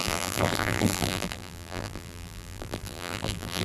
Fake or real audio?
fake